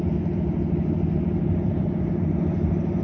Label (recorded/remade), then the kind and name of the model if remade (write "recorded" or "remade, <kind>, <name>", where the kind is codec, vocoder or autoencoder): recorded